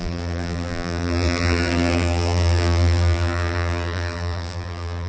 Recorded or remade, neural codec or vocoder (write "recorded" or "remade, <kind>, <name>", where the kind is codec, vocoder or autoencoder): remade, vocoder, BigVGAN v2